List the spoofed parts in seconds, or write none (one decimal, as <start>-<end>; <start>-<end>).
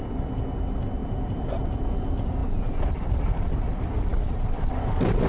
1.0-1.7; 2.4-3.4; 4.1-4.7